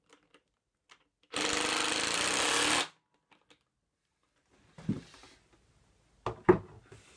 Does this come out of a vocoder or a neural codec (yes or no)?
no